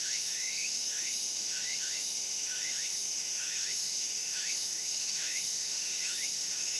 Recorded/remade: remade